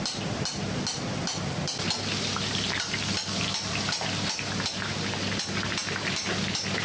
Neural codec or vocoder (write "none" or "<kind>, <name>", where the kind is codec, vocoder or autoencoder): none